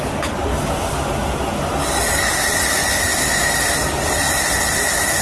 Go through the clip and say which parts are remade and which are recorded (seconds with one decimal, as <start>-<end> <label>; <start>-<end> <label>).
0.0-5.2 recorded